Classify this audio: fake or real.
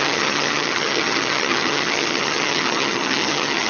fake